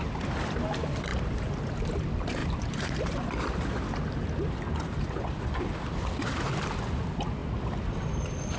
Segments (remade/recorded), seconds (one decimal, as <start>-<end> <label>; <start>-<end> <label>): 0.0-1.1 recorded; 1.1-2.0 remade; 2.0-2.4 recorded; 2.4-6.5 remade; 6.5-7.4 recorded; 7.4-8.6 remade